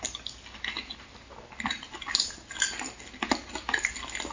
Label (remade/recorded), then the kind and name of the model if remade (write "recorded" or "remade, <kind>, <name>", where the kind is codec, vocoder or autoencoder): recorded